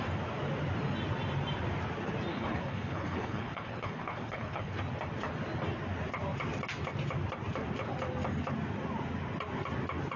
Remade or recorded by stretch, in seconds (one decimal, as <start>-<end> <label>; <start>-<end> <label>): 0.0-2.3 recorded; 2.3-4.8 remade; 4.8-10.2 recorded